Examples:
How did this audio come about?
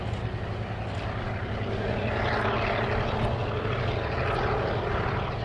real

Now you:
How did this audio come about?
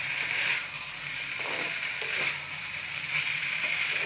fake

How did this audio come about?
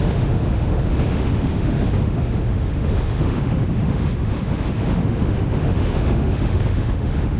fake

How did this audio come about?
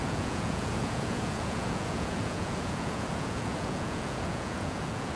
fake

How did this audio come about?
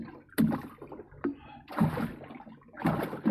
real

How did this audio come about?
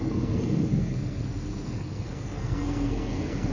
fake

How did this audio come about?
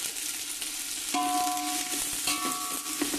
real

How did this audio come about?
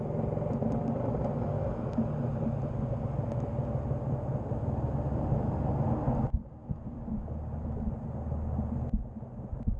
real